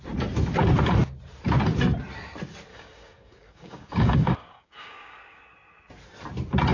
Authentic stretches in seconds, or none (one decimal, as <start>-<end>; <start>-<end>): 0.0-2.7; 5.4-6.7